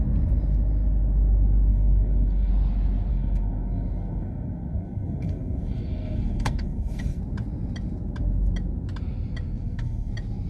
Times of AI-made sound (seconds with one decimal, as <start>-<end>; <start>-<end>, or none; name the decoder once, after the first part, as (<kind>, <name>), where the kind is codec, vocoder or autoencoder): 1.7-2.5 (codec, SNAC); 3.1-7.2; 9.6-10.1